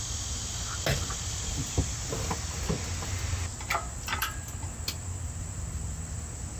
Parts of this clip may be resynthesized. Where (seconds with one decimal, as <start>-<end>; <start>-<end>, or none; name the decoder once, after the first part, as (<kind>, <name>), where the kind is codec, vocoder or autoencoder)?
none